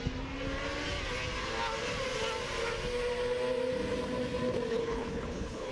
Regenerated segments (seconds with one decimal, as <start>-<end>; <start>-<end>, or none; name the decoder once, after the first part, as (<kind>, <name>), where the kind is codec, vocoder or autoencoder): 4.7-5.7 (codec, HILCodec)